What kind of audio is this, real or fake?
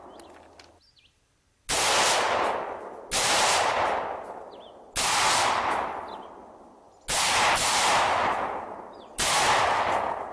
real